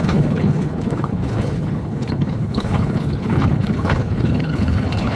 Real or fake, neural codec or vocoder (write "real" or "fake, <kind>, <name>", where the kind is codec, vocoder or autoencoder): fake, codec, HILCodec